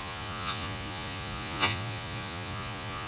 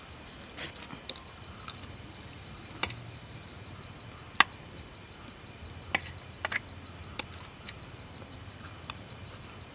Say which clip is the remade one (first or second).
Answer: first